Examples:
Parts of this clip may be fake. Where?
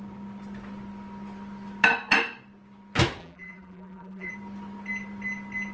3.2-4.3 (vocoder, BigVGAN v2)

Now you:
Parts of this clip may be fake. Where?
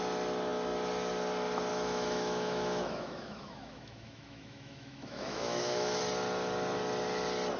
1.7-6.0 (autoencoder, DAC-VAE)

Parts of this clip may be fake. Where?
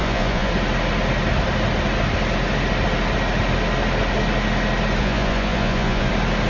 0.0-0.5 (vocoder, Vocos); 5.0-6.1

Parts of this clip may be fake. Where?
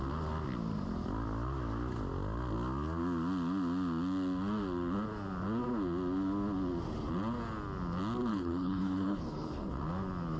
8.3-9.8 (codec, HILCodec)